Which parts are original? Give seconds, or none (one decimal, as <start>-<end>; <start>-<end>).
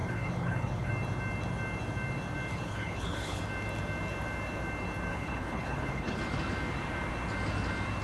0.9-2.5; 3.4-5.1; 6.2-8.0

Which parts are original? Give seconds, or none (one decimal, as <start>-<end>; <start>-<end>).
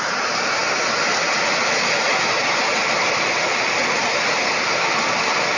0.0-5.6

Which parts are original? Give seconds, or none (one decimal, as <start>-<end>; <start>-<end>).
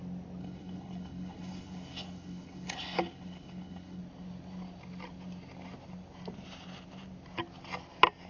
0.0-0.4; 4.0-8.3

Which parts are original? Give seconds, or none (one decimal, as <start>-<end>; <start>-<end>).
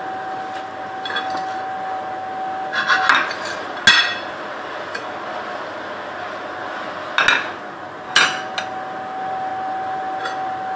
0.0-10.8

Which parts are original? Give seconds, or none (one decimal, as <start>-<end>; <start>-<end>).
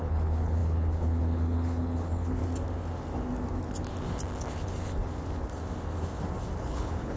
2.4-6.6